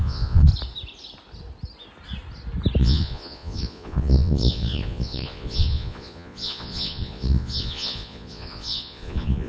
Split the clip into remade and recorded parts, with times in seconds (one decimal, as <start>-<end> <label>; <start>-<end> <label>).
0.0-0.5 remade; 0.5-2.8 recorded; 2.8-9.5 remade